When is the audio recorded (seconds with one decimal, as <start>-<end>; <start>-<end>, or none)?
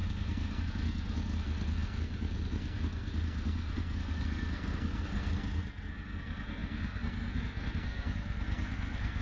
none